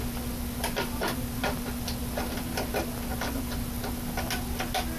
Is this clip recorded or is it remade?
recorded